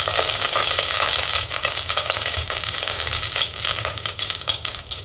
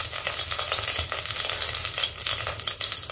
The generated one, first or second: first